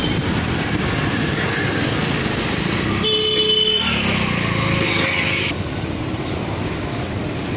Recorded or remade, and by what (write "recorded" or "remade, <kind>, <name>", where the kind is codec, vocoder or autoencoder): recorded